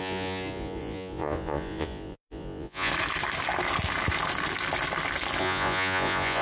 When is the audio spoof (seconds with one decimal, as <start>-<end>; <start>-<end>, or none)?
0.0-2.9; 5.4-6.4

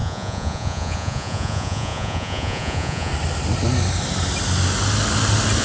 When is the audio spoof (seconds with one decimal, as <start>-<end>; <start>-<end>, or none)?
0.0-3.1

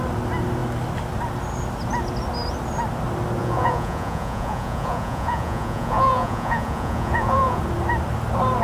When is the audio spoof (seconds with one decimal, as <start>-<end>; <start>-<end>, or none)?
3.4-7.6